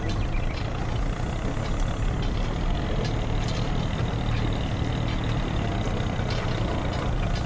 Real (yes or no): yes